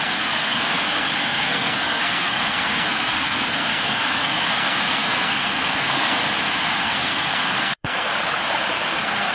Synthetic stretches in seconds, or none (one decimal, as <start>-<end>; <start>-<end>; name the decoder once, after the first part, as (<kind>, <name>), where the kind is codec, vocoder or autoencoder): 0.0-6.2 (codec, SNAC); 6.8-8.1; 8.7-9.3